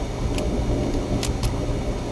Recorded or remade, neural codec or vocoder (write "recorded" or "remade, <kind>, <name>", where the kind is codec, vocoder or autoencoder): recorded